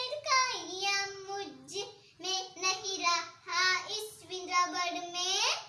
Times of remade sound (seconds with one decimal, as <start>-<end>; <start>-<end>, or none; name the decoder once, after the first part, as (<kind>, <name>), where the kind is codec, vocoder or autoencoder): none